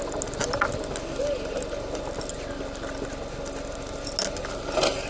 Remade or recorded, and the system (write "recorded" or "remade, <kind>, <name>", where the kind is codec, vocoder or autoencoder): recorded